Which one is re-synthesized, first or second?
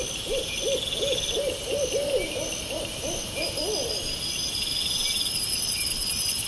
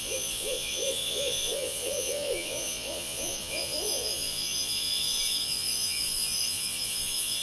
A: second